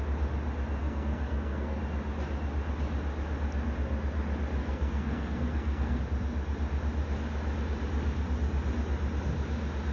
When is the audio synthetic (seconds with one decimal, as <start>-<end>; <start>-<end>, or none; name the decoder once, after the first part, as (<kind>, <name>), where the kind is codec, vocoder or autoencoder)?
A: 0.8-1.8 (codec, SNAC); 4.6-6.0